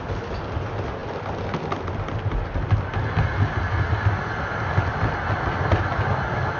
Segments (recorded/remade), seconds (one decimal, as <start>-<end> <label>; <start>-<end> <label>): 0.0-6.6 recorded